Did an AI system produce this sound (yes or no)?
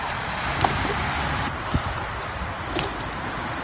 no